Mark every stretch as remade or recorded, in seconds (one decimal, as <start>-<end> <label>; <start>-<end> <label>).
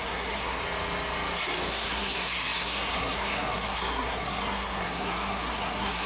0.0-0.6 remade; 0.6-1.7 recorded; 1.7-6.1 remade